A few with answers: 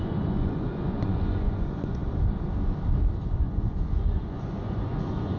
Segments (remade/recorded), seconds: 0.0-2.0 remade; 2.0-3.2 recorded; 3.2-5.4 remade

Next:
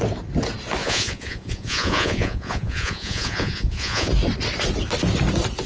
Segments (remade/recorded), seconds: 0.0-0.8 recorded; 0.8-4.1 remade; 4.1-5.7 recorded